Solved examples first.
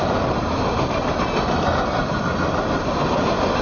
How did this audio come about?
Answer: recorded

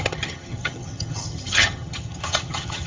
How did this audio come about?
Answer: remade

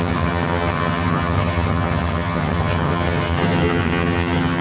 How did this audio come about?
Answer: remade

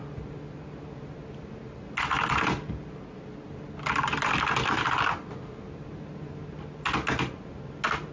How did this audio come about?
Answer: recorded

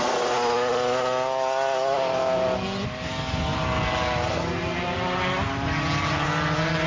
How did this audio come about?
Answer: recorded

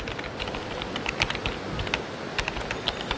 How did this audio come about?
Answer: recorded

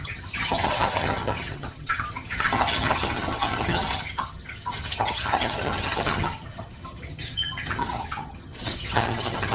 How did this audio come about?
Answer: remade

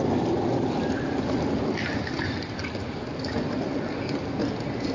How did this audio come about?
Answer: recorded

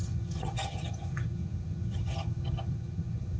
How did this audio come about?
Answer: remade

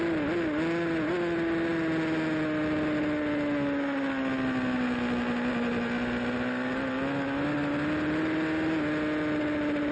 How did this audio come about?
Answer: recorded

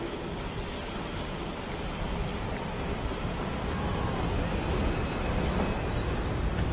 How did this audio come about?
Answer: recorded